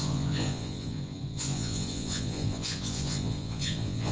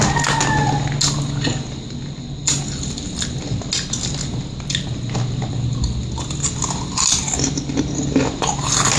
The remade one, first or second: first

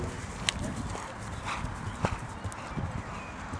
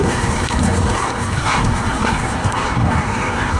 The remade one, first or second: second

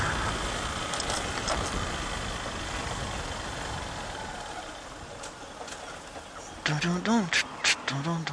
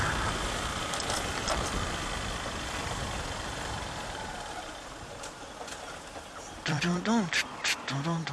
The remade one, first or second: second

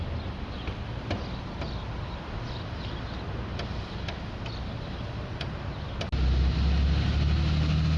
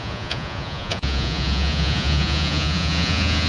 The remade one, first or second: second